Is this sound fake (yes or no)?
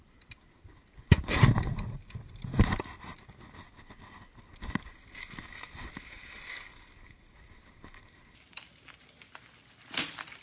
no